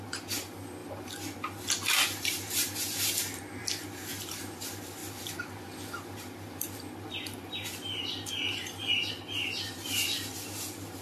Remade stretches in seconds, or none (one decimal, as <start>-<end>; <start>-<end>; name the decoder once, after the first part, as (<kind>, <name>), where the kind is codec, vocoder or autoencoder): 0.8-3.1 (vocoder, BigVGAN v2); 5.0-9.1